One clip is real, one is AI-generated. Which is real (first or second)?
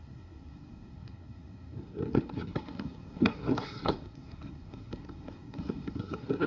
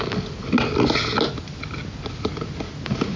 second